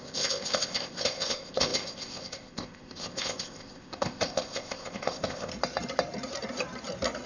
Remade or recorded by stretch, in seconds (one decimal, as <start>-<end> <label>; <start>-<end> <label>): 0.0-5.5 remade; 5.5-7.3 recorded